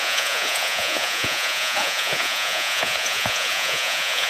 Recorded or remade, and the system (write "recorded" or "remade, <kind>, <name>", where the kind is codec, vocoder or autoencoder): remade, vocoder, Vocos